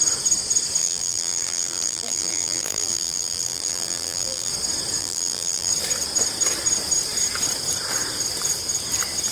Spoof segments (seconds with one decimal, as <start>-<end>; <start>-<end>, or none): 0.8-4.5; 5.0-5.7